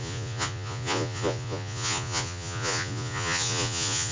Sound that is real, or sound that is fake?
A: fake